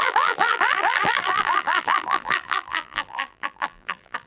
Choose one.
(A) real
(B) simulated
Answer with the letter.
B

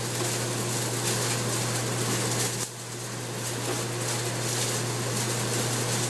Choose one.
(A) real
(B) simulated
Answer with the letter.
A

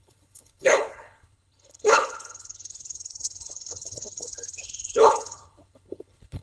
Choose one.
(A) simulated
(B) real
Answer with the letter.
A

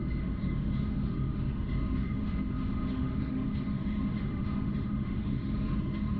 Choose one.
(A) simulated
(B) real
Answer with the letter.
A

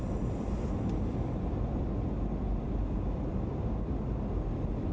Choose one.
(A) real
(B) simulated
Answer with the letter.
A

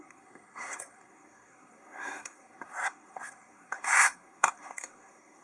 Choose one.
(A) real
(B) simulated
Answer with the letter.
B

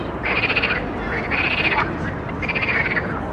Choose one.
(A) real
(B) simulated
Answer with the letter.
A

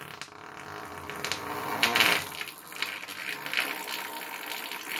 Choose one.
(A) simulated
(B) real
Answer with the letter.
B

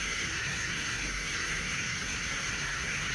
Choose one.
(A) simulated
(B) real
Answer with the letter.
A